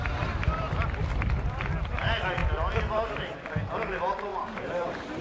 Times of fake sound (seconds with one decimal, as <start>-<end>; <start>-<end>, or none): 4.3-5.2